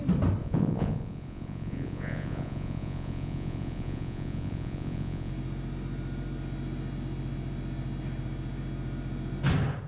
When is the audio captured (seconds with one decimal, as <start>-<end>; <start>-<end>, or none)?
0.0-0.4; 5.3-9.9